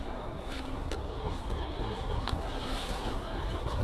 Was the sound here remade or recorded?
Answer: remade